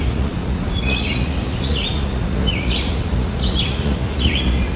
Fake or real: fake